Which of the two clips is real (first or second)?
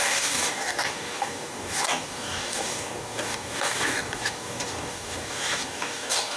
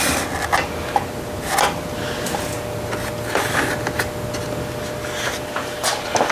second